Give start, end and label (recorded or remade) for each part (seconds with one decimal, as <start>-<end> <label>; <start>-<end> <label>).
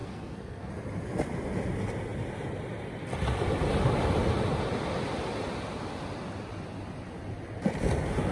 0.0-0.7 remade; 0.7-8.3 recorded